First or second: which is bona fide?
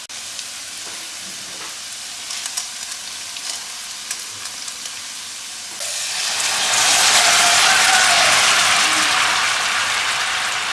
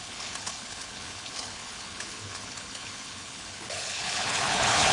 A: first